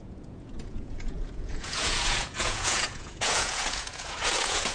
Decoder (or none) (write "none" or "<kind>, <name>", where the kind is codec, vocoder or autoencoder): vocoder, Vocos